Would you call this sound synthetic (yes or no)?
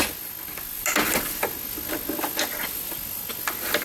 no